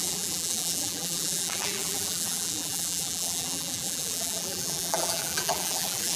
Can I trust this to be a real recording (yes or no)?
no